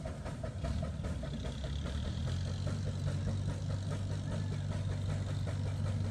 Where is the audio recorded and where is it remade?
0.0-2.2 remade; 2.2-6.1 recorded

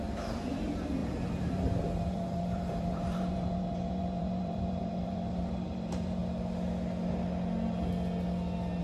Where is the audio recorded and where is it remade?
0.0-6.2 remade; 6.2-8.8 recorded

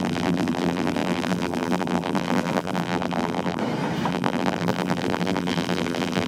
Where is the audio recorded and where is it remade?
0.0-3.6 remade; 3.6-4.1 recorded; 4.1-6.3 remade

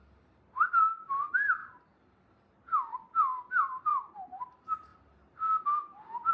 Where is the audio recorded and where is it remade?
0.0-6.3 recorded

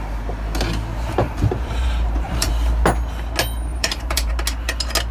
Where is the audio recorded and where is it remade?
0.0-0.9 recorded; 0.9-2.5 remade; 2.5-3.7 recorded; 3.7-4.3 remade; 4.3-5.1 recorded

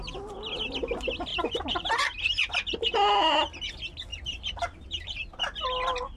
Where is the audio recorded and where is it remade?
0.0-1.3 recorded; 1.3-1.9 remade; 1.9-4.1 recorded; 4.1-5.6 remade; 5.6-6.2 recorded

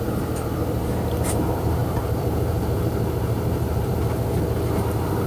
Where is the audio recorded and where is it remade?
0.0-5.3 remade